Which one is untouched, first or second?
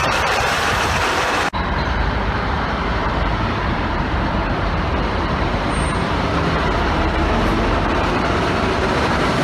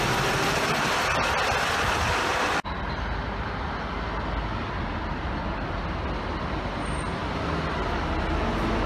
second